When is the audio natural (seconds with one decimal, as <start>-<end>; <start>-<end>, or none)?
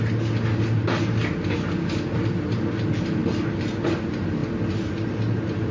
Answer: 0.0-5.7